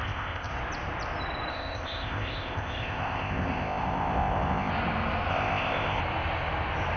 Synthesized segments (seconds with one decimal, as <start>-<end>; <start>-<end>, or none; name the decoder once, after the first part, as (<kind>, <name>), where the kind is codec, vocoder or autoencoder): 0.0-0.5 (codec, ZipCodec); 1.5-4.7; 5.3-6.0